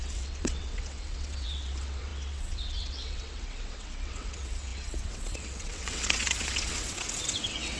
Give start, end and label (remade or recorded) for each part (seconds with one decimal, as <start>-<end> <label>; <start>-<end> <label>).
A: 0.0-7.8 remade

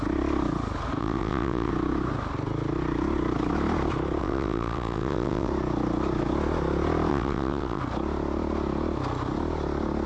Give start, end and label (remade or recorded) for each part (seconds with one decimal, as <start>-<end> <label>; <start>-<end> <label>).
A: 0.0-1.0 recorded; 1.0-1.7 remade; 1.7-4.2 recorded; 4.2-5.5 remade; 5.5-7.1 recorded; 7.1-7.8 remade; 7.8-10.1 recorded

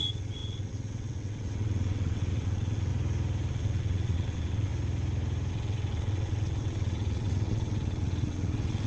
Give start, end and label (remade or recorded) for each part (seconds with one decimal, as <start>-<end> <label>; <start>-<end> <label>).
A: 0.0-2.9 remade; 2.9-3.5 recorded; 3.5-4.7 remade; 4.7-5.5 recorded; 5.5-8.9 remade

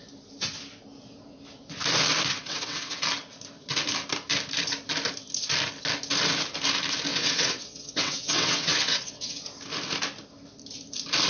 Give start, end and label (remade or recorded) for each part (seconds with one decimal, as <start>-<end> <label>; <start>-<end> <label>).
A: 0.0-2.3 recorded; 2.3-3.0 remade; 3.0-7.1 recorded; 7.1-9.4 remade; 9.4-11.3 recorded